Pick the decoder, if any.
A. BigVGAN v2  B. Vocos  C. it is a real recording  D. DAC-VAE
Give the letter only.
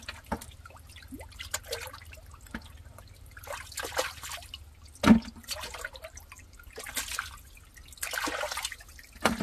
C